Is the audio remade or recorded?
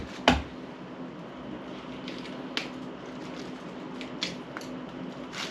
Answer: recorded